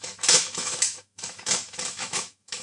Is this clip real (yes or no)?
no